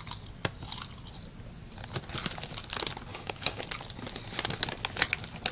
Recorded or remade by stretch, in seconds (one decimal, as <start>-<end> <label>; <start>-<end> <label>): 0.0-3.1 recorded; 3.1-3.6 remade; 3.6-5.5 recorded